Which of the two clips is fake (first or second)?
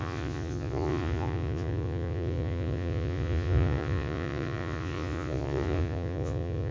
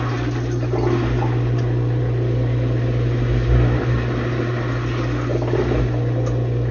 first